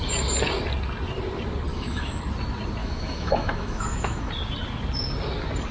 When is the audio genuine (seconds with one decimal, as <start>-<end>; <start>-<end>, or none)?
0.0-1.7; 2.2-2.8; 4.3-5.7